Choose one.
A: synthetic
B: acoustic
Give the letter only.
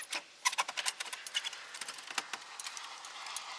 B